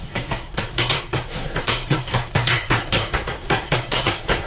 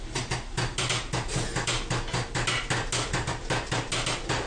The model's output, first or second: first